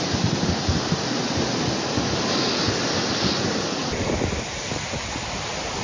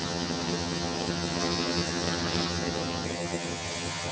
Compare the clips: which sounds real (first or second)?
first